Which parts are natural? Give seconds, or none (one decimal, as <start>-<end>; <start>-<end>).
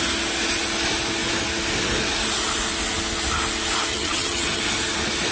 0.0-3.9; 4.6-5.3